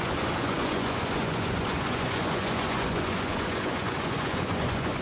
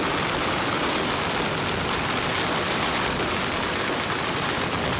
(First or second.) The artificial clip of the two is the first